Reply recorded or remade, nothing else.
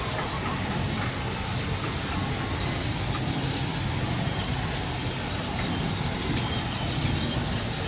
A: recorded